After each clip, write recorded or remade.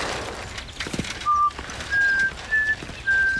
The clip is recorded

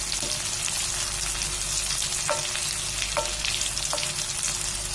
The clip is recorded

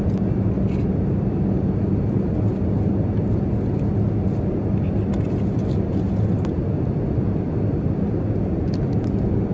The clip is recorded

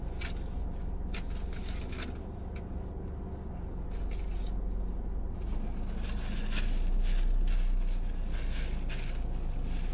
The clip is recorded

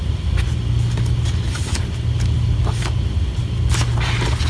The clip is recorded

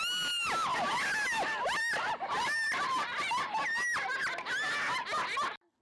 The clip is recorded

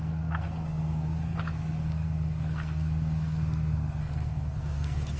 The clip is remade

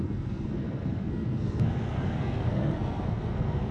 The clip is remade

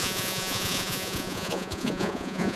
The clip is remade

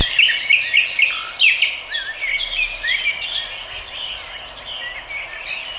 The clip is recorded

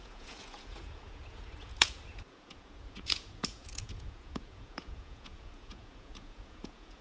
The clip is remade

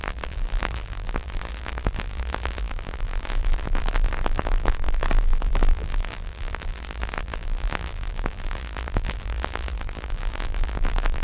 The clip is remade